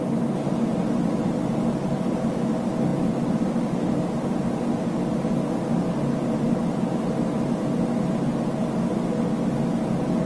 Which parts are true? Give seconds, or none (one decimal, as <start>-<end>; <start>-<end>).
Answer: 0.0-10.3

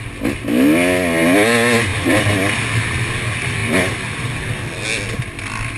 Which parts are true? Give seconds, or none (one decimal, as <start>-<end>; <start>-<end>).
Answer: 0.0-1.9; 2.6-5.8

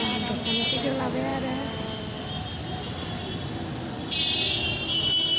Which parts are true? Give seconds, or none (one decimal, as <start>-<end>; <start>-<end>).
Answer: 0.0-5.4

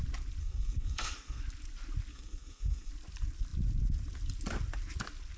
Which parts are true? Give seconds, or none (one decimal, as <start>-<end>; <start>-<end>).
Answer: 0.0-0.4; 1.4-2.1; 2.9-5.4

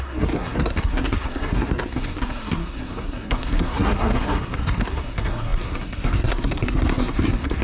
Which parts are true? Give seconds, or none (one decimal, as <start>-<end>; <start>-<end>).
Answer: none